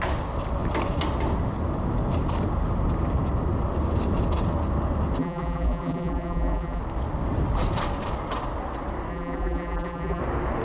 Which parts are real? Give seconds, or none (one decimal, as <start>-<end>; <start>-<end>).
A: 0.0-5.2; 6.8-9.1; 10.2-10.6

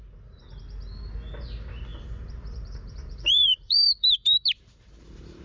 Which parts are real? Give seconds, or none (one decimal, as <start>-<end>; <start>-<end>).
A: 0.0-1.9

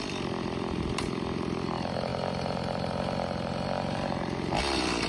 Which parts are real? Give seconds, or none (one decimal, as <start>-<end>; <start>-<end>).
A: 2.1-3.0

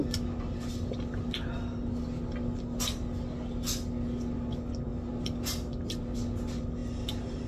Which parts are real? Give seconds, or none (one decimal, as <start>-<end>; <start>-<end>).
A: 0.0-7.5

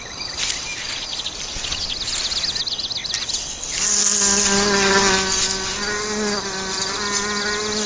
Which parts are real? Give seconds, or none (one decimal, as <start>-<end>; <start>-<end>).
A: 0.0-7.9

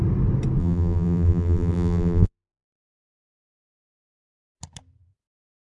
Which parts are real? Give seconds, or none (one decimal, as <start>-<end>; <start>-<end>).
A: 0.0-0.6; 4.0-5.7